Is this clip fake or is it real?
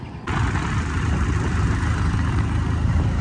real